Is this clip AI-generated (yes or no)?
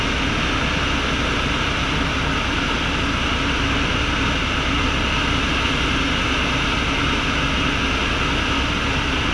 no